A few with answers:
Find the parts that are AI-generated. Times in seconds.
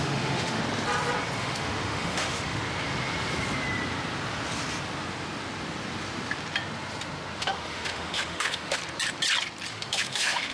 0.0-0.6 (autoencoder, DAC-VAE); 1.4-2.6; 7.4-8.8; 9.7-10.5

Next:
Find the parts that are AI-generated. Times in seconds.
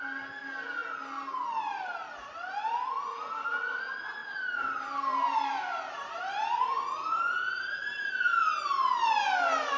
4.2-8.1 (vocoder, BigVGAN v2)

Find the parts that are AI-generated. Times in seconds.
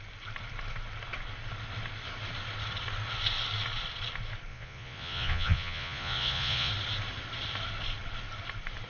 4.5-6.7 (vocoder, Vocos)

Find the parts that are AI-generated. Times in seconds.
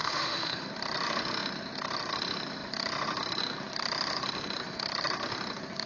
0.0-0.7 (autoencoder, DAC-VAE)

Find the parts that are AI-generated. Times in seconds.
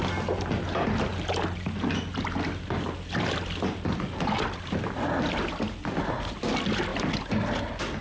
none